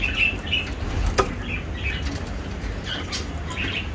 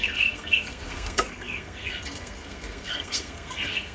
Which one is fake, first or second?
second